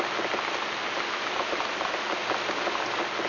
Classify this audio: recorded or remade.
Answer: recorded